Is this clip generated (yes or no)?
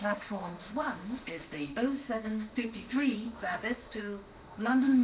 yes